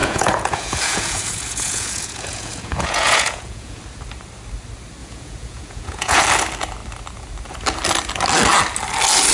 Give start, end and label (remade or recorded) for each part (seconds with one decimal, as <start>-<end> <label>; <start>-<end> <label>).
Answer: 0.0-3.8 remade; 3.8-5.0 recorded; 5.0-6.2 remade; 6.2-9.3 recorded